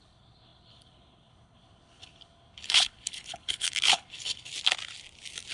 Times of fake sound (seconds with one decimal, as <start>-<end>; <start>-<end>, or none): 0.0-4.5